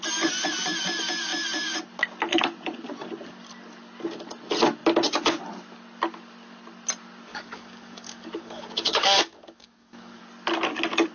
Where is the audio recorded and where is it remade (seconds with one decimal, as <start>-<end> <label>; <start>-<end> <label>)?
0.0-7.3 recorded; 7.3-10.2 remade; 10.2-11.1 recorded